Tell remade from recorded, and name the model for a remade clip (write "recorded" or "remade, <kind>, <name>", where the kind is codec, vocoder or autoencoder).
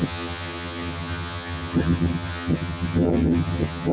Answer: remade, vocoder, HiFi-GAN